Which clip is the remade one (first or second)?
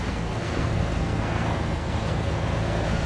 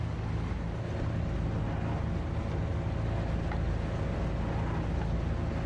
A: first